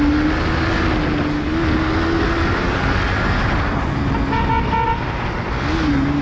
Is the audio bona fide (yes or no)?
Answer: yes